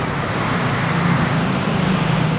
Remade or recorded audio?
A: recorded